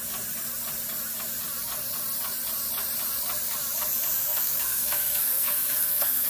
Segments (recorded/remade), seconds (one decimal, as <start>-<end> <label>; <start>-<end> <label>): 0.0-4.2 recorded; 4.2-6.3 remade